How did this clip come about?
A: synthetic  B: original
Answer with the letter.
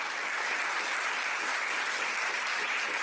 B